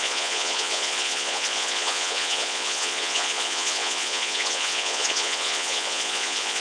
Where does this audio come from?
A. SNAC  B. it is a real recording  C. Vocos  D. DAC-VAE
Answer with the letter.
C